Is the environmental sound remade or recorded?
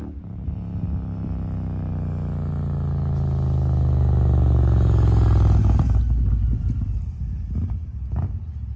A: recorded